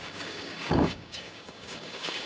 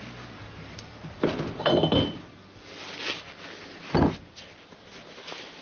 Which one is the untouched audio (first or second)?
second